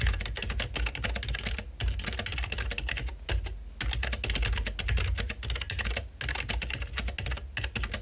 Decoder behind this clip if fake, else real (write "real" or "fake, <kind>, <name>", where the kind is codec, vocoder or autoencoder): real